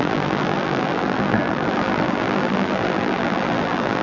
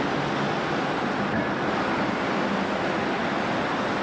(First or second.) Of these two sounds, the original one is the second